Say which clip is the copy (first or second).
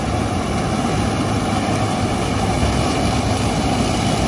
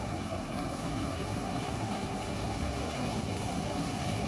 second